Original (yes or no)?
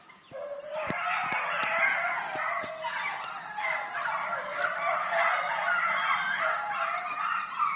yes